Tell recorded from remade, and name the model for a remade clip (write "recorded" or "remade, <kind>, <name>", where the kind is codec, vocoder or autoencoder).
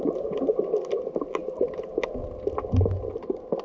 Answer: recorded